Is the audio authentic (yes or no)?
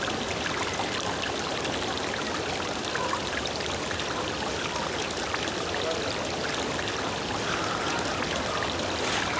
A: no